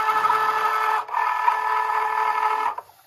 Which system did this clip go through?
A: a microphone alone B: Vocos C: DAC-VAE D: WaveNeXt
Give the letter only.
A